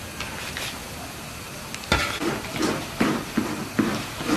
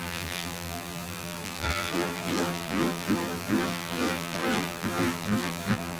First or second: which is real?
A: first